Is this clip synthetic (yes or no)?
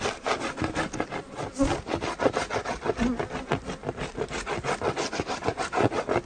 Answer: no